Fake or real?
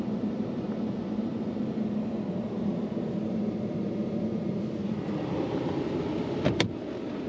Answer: real